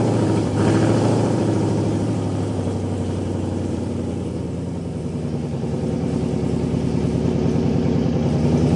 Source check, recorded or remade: remade